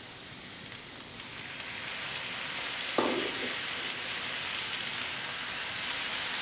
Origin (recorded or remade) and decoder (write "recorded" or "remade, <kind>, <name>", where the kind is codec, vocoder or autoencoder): recorded